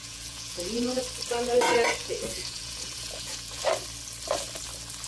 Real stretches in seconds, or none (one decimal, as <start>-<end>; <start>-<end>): 1.0-2.0; 3.6-5.1